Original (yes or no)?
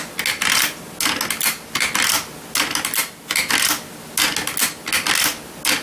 yes